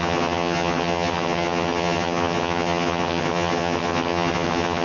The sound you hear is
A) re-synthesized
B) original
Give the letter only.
A